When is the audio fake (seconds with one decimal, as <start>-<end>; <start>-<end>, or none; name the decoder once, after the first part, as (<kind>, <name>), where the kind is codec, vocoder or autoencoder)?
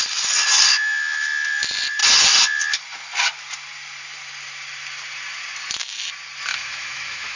0.7-1.6 (autoencoder, DAC-VAE); 6.5-7.4